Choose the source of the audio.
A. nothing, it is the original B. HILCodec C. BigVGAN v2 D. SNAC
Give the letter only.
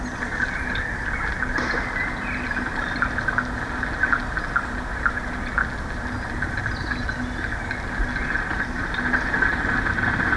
A